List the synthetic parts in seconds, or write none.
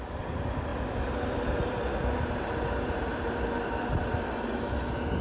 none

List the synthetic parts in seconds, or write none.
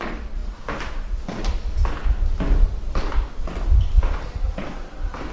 none